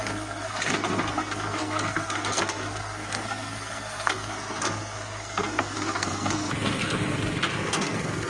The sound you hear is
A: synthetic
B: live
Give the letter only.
A